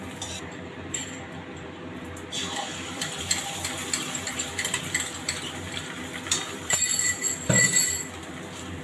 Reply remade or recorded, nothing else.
remade